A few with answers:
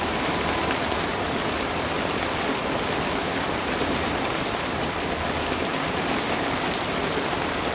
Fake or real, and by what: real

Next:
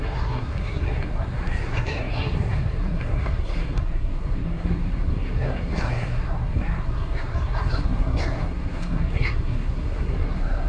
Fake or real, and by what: fake, codec, SNAC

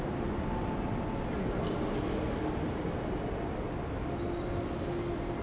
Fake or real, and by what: real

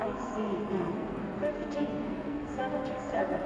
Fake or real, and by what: fake, codec, SNAC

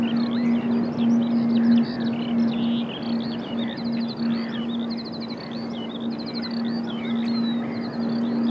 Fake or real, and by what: real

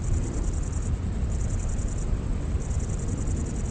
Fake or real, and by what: real